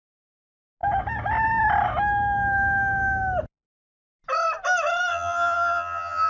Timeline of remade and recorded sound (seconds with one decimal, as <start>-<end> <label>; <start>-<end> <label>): 0.0-5.1 recorded; 5.1-6.3 remade